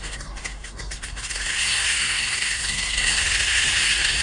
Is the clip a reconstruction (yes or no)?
yes